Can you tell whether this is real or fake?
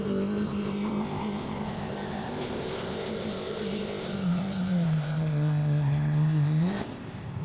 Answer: fake